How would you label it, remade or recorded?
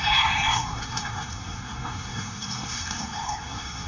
remade